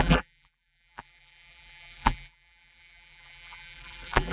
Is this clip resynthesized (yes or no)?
yes